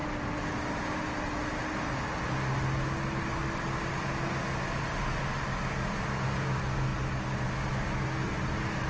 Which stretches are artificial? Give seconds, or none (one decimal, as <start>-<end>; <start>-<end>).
none